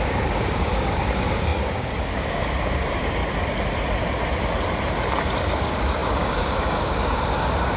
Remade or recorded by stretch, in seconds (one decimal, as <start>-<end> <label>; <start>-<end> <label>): 0.0-3.2 remade; 3.2-5.4 recorded; 5.4-7.8 remade